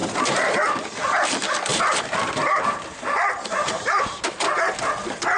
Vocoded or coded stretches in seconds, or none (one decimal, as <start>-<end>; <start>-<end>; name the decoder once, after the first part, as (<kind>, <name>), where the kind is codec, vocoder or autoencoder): 0.0-0.8 (vocoder, BigVGAN v2); 1.7-4.9